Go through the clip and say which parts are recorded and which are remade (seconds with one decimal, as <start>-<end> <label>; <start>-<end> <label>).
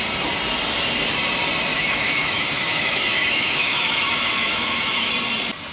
0.0-1.7 recorded; 1.7-5.1 remade; 5.1-5.7 recorded